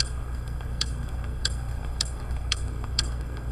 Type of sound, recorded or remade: remade